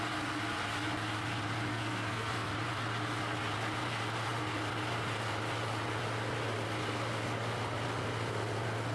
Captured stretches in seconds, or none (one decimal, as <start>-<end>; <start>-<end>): 0.0-1.7; 2.5-8.9